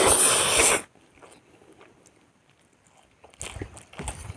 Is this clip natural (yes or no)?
yes